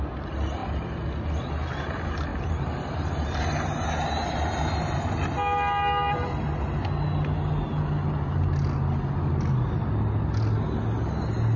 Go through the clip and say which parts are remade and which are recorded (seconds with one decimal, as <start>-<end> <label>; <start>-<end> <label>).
0.0-2.3 recorded; 2.3-3.4 remade; 3.4-11.6 recorded